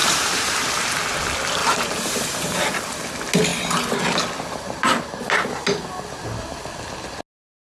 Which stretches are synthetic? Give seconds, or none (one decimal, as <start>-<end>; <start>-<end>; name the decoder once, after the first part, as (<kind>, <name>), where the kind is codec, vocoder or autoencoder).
0.0-0.7 (vocoder, BigVGAN v2); 1.6-2.8